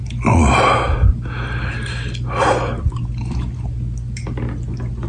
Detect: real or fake real